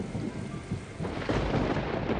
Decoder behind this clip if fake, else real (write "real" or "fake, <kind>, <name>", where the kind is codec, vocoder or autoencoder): real